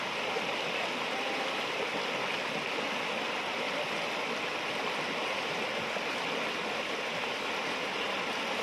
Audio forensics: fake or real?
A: real